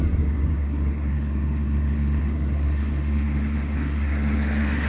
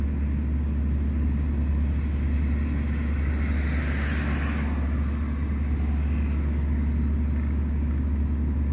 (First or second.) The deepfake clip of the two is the first